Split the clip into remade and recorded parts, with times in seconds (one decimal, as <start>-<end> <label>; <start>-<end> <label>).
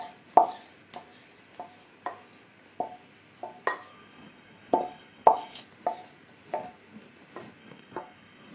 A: 0.0-3.9 recorded; 3.9-5.6 remade; 5.6-7.6 recorded; 7.6-8.5 remade